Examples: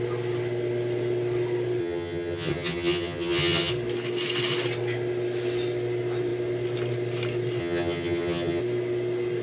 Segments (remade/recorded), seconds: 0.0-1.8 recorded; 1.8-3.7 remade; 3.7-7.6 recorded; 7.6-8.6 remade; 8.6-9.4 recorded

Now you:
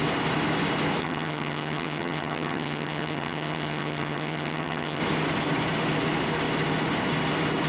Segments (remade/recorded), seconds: 0.0-1.0 recorded; 1.0-5.0 remade; 5.0-7.7 recorded

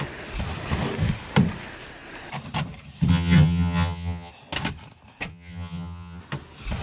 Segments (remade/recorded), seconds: 0.0-3.1 recorded; 3.1-4.3 remade; 4.3-5.3 recorded; 5.3-6.2 remade; 6.2-6.8 recorded